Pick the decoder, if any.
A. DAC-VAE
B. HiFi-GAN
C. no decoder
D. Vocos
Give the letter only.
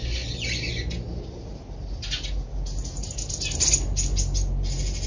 C